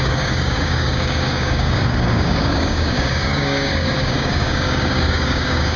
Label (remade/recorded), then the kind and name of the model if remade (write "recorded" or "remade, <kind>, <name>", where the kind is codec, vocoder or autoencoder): remade, codec, DAC